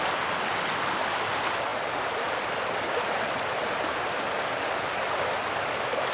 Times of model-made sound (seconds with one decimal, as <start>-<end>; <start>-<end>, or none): none